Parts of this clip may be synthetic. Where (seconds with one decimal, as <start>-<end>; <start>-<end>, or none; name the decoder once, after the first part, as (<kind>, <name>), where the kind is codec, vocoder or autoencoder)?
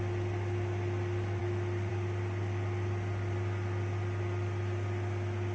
none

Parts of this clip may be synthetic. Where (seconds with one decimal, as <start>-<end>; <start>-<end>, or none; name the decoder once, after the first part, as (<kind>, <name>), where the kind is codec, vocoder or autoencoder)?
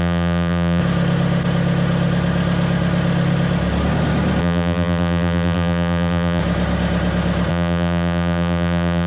0.0-0.8 (vocoder, BigVGAN v2); 4.4-6.4; 7.5-9.1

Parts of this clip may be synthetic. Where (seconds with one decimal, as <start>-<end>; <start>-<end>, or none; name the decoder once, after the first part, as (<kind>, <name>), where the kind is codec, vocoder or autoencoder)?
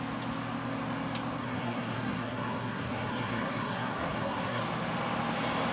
1.4-4.6 (codec, SNAC)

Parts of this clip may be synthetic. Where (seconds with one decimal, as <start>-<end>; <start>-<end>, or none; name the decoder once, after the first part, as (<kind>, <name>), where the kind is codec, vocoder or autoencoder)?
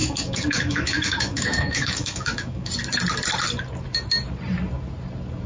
0.0-2.7 (autoencoder, DAC-VAE)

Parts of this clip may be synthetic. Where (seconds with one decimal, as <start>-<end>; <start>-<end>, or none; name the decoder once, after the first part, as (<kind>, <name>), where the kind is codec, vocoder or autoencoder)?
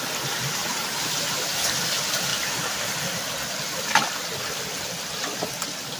none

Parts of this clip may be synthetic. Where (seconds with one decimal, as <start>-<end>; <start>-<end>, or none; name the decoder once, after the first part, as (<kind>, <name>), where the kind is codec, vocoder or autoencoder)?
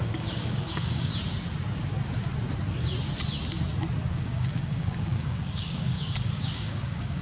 0.0-1.1 (codec, DAC); 4.1-7.2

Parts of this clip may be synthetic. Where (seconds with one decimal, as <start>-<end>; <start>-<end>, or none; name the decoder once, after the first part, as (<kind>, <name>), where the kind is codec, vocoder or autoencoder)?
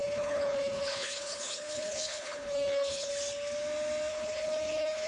0.0-3.1 (codec, HILCodec); 4.1-5.1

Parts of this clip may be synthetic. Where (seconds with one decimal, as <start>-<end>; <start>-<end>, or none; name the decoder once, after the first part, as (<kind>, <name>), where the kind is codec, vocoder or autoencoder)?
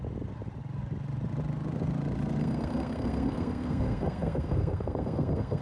2.4-5.6 (codec, SNAC)